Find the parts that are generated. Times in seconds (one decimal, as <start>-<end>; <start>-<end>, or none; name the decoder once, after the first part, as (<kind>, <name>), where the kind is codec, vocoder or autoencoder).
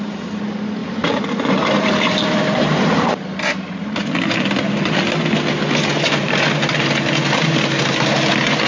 0.8-4.0 (vocoder, BigVGAN v2)